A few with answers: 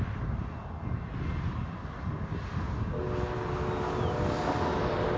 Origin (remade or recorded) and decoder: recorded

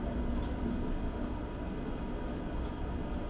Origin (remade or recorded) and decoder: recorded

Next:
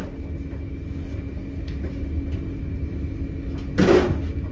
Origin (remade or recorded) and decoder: recorded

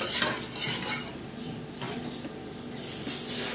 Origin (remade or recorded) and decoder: recorded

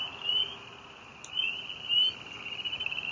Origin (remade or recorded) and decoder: recorded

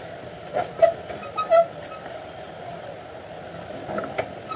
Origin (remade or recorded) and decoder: recorded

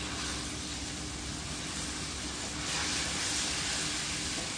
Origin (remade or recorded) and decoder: recorded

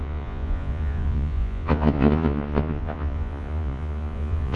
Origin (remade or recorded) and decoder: remade, vocoder, Vocos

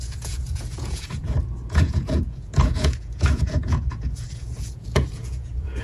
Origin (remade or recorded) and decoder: remade, vocoder, Vocos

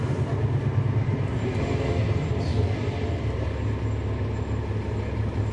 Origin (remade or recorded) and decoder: recorded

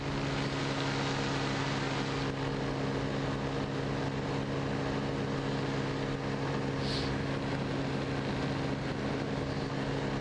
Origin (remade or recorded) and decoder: recorded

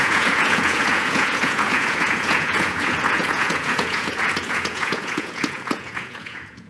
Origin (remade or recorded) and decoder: remade, vocoder, Vocos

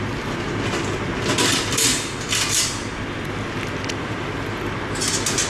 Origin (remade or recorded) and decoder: recorded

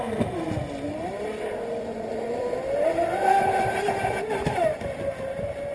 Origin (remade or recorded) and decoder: recorded